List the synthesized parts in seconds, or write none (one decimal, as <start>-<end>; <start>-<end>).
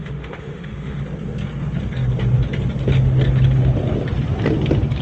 0.0-1.0